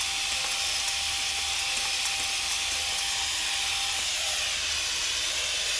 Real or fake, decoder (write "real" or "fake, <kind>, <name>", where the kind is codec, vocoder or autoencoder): real